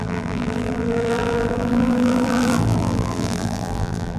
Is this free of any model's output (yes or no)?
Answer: no